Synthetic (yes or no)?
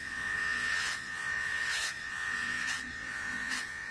yes